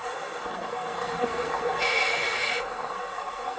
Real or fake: fake